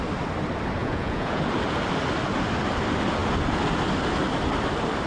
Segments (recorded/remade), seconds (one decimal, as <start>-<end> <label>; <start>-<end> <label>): 0.0-0.8 recorded; 0.8-1.4 remade; 1.4-5.1 recorded